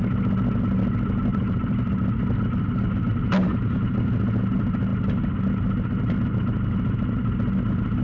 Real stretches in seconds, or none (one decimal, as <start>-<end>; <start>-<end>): 0.0-1.3; 1.9-3.1; 4.0-8.0